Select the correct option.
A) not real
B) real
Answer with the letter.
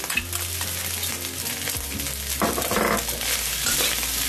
B